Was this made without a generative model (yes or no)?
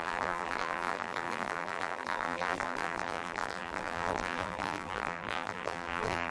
no